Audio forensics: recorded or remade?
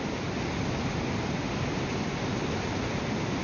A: recorded